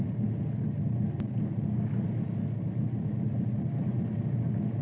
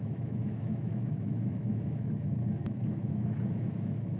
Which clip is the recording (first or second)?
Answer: first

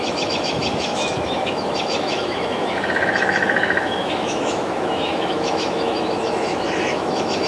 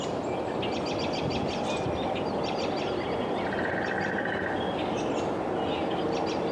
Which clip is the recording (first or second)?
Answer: second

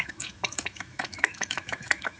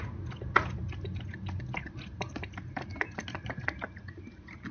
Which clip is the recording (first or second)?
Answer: second